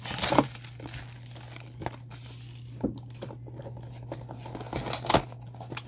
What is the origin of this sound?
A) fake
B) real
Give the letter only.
B